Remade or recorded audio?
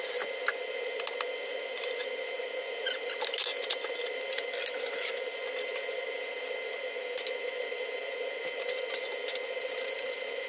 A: recorded